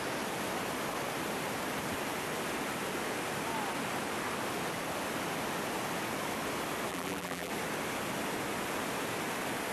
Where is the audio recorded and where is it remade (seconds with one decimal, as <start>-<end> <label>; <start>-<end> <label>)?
0.0-6.9 recorded; 6.9-7.5 remade; 7.5-9.7 recorded